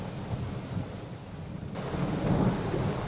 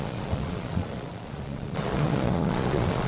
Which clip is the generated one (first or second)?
second